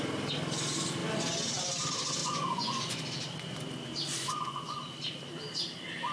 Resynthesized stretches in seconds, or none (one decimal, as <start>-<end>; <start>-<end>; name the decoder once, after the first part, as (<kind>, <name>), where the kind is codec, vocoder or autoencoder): 2.2-3.0 (vocoder, Vocos); 4.1-4.8